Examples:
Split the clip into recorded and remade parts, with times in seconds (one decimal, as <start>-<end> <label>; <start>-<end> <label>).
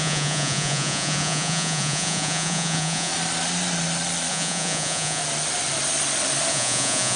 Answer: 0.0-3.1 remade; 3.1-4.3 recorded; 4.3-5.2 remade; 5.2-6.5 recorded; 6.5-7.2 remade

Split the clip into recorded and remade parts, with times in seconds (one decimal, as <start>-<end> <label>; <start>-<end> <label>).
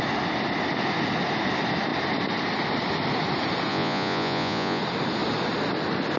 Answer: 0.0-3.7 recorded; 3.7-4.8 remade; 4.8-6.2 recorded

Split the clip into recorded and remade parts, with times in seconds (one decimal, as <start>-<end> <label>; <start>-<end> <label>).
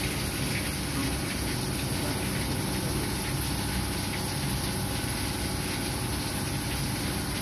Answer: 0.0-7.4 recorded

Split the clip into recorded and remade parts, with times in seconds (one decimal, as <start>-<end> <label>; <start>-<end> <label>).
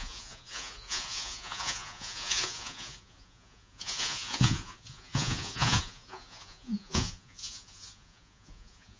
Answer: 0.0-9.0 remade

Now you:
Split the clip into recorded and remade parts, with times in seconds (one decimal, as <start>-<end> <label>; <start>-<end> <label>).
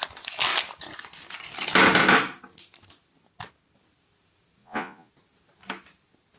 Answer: 0.0-4.6 recorded; 4.6-5.1 remade; 5.1-6.4 recorded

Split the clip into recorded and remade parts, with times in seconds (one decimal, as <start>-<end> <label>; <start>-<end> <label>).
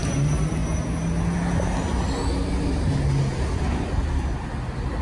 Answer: 0.0-5.0 recorded